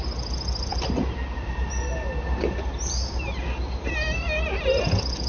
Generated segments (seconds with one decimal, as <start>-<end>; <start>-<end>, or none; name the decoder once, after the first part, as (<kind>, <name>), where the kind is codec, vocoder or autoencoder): none